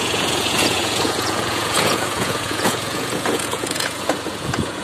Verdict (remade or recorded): remade